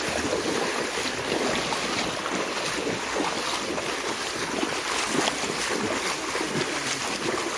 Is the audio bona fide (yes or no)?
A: yes